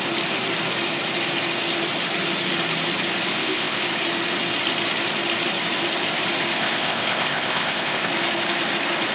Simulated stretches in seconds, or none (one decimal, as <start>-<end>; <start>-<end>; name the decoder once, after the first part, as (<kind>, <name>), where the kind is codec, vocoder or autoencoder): 3.3-3.8 (codec, ZipCodec); 6.5-8.1

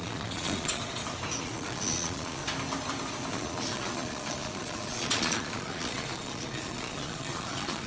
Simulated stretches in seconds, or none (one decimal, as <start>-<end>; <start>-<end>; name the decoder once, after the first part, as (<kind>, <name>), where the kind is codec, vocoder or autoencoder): 0.0-0.8 (vocoder, Vocos); 1.4-2.4; 3.3-7.9

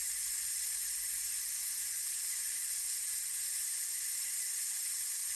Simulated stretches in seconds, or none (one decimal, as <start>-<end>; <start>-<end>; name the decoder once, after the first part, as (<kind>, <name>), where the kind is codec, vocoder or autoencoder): 0.0-5.4 (vocoder, BigVGAN v2)